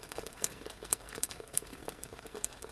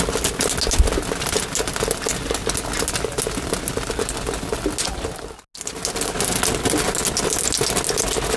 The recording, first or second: second